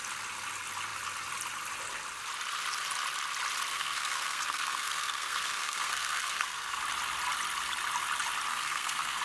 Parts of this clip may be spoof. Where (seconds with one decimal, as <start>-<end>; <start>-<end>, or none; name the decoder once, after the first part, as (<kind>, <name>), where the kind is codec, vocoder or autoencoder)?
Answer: 3.7-6.8 (codec, SNAC); 8.5-9.2